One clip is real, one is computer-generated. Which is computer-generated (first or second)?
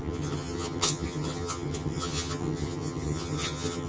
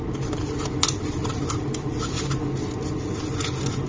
first